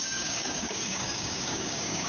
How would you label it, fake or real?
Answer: fake